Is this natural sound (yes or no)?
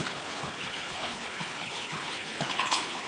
no